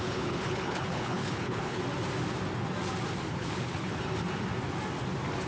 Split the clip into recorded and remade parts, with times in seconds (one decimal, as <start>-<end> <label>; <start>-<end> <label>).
0.0-1.8 remade; 1.8-3.3 recorded; 3.3-3.9 remade; 3.9-5.5 recorded